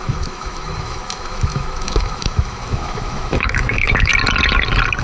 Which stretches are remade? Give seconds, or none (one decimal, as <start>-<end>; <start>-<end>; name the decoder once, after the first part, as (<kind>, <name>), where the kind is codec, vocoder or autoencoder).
0.0-4.1 (autoencoder, DAC-VAE)